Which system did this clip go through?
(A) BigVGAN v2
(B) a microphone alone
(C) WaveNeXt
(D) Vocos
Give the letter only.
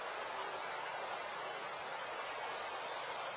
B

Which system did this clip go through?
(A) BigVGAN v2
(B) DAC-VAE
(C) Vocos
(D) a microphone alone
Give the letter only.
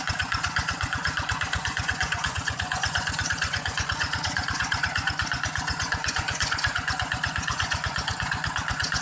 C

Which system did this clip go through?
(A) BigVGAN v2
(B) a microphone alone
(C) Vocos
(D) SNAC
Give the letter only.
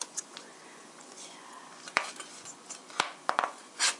C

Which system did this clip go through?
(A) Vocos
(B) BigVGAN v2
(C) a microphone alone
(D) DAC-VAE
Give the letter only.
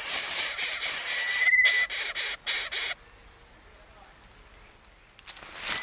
C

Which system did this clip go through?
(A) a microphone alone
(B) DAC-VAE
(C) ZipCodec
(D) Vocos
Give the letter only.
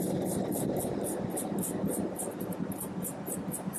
A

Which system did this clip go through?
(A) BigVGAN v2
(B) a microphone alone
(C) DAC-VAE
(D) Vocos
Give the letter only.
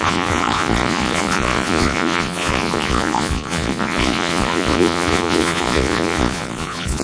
D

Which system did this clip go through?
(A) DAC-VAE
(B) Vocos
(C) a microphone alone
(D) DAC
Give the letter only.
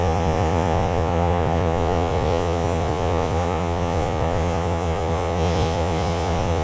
B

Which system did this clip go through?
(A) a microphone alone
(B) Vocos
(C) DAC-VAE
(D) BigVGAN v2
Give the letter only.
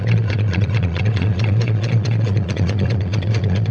B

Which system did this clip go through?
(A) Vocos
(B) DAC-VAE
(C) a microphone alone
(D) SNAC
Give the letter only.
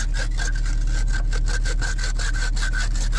C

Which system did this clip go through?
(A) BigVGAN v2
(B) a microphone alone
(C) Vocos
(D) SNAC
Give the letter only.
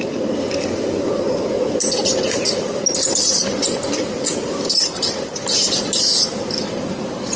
B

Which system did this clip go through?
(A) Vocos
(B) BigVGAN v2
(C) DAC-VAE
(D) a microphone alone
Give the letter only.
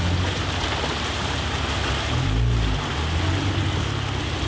D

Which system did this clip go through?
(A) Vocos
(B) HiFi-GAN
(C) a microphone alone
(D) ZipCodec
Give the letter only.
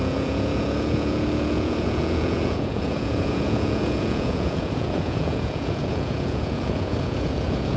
A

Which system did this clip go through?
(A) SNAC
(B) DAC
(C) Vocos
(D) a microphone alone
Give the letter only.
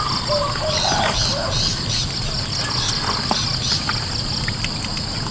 D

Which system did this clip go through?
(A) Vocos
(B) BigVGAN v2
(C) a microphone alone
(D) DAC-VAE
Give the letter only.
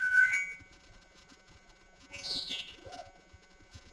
A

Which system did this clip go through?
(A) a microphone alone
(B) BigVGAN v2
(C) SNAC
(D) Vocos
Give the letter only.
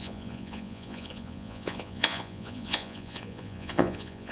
D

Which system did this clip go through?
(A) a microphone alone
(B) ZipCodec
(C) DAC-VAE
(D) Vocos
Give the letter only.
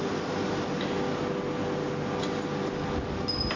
A